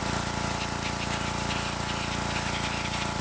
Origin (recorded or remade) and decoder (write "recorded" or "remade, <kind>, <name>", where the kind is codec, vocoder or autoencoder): recorded